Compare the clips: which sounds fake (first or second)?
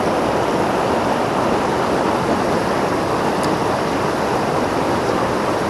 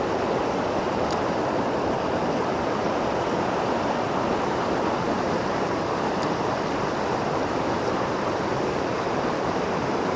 second